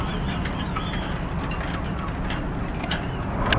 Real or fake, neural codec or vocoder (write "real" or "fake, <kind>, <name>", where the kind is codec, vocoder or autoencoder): real